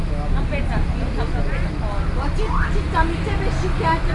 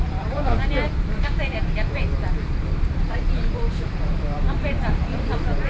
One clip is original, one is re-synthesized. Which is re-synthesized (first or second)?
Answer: second